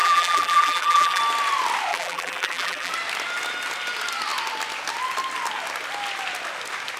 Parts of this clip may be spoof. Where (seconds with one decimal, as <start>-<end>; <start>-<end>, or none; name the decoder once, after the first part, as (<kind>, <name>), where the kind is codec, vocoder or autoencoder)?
0.0-1.2 (vocoder, BigVGAN v2); 1.9-2.9